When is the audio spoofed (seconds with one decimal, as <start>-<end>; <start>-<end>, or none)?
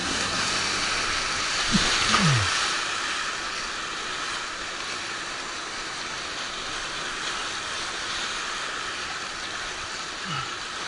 0.0-0.5